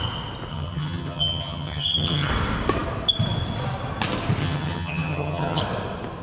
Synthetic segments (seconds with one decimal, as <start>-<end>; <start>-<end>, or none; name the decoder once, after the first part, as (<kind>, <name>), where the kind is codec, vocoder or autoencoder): 0.5-2.3 (vocoder, HiFi-GAN); 4.4-5.6